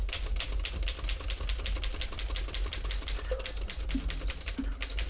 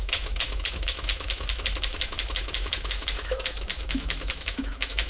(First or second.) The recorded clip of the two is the first